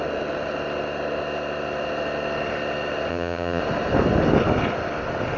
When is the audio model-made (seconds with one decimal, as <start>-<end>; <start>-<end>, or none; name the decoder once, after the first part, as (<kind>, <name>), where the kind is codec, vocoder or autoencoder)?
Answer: 3.1-3.6 (vocoder, HiFi-GAN)